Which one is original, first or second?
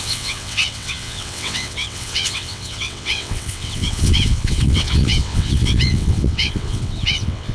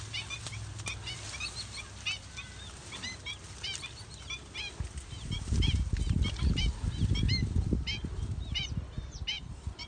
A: second